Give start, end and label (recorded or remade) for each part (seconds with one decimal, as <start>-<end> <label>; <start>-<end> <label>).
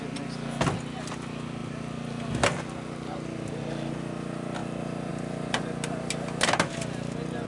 0.0-7.5 recorded